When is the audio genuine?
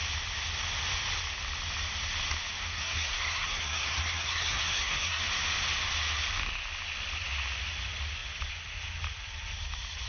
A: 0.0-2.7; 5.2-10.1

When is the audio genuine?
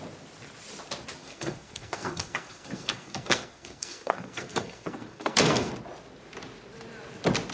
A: 0.0-1.2; 5.7-7.5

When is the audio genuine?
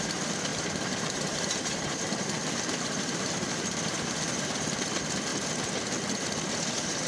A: 0.0-0.5; 4.8-7.1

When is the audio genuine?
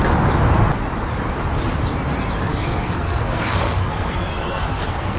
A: 0.0-2.5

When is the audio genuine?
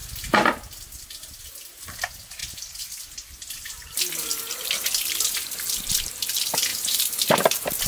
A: 0.0-2.4; 5.8-6.7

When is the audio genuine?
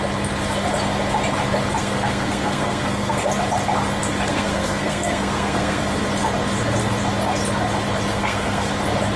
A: 0.0-1.8; 3.2-4.3; 5.8-8.1; 8.7-9.2